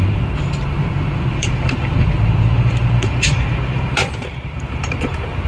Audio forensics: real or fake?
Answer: fake